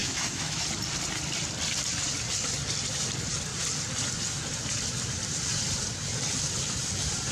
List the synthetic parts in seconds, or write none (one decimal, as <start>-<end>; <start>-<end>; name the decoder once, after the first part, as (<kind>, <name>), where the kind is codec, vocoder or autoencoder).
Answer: 0.0-0.6 (autoencoder, DAC-VAE)